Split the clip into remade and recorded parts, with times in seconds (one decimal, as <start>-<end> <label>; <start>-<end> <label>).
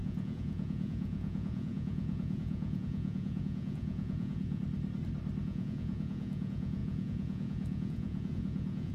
0.0-4.6 remade; 4.6-5.4 recorded; 5.4-8.9 remade